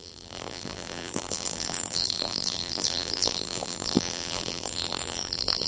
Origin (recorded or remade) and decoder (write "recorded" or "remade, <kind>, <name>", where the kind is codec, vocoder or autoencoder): remade, vocoder, BigVGAN v2